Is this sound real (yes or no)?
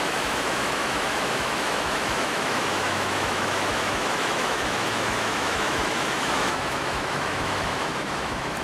no